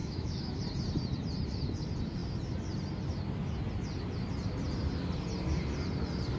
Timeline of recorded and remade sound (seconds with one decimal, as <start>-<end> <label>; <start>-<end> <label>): 0.0-0.6 remade; 0.6-6.4 recorded